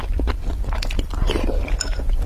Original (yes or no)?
yes